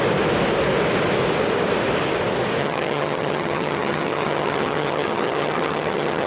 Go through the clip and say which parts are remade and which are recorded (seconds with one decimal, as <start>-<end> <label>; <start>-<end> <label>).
0.0-2.6 recorded; 2.6-6.3 remade